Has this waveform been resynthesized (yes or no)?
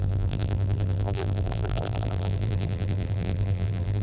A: yes